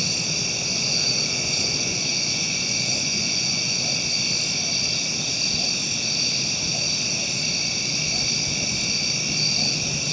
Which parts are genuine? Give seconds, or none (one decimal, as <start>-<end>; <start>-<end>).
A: 0.0-0.7; 3.8-10.1